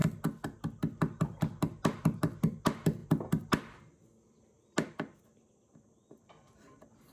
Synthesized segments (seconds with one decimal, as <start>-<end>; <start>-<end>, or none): none